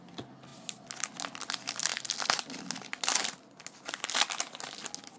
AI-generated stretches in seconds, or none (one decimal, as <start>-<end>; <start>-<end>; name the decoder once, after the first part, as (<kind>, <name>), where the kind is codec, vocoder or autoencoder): none